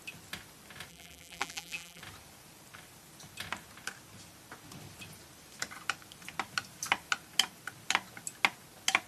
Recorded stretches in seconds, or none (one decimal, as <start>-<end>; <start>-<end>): 0.0-0.9; 2.0-9.1